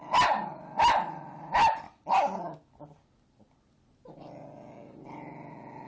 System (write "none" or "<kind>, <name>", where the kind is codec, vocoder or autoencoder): none